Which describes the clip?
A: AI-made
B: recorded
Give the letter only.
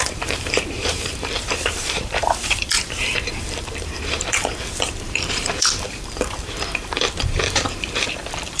A